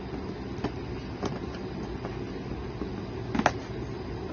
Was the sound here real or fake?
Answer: real